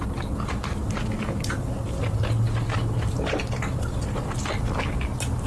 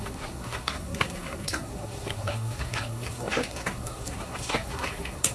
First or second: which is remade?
second